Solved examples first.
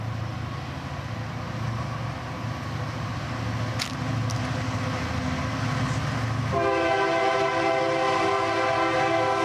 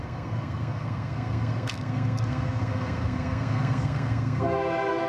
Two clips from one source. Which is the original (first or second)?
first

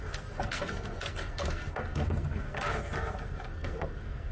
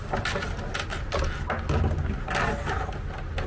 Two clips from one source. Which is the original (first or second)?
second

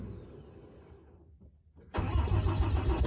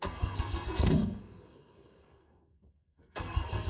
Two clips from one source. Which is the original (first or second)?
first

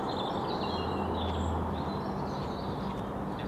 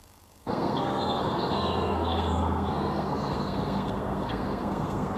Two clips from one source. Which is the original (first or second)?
first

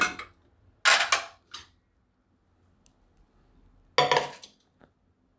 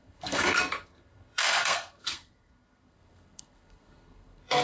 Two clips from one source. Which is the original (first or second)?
first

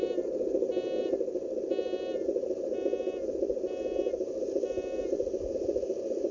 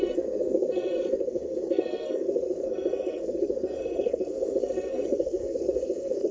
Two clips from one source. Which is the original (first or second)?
first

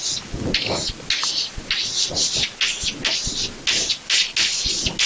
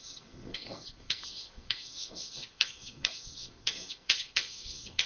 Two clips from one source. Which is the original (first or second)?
first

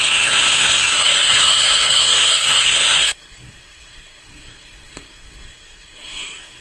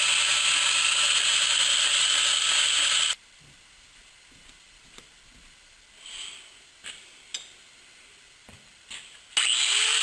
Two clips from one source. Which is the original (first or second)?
second